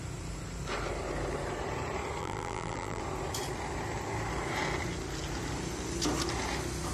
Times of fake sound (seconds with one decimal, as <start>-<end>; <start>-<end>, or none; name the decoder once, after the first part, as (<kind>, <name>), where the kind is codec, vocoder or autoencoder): 2.2-3.0 (vocoder, BigVGAN v2)

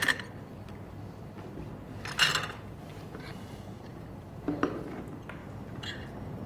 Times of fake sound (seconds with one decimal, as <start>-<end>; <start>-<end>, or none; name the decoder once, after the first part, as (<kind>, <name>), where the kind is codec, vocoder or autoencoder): none

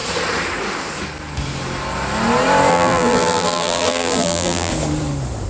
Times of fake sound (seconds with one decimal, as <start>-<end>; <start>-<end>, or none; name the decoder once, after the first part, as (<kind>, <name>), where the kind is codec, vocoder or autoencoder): 2.7-4.7 (vocoder, BigVGAN v2)